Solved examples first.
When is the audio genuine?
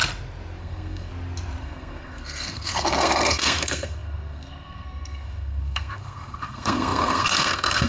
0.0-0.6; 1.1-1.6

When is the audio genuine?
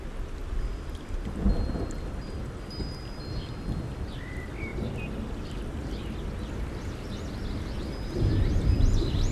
0.0-4.7; 5.9-9.3